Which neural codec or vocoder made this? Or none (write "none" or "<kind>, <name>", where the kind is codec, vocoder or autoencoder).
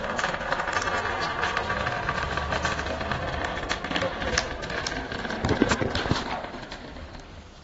none